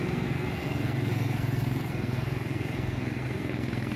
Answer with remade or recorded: remade